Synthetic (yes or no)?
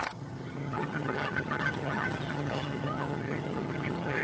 yes